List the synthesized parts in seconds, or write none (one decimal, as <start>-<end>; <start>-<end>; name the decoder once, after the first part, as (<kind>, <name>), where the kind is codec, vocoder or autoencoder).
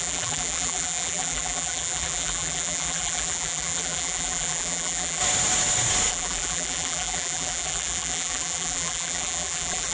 0.0-5.2 (vocoder, BigVGAN v2); 6.1-9.9